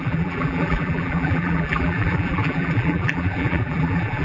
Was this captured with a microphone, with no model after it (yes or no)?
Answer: no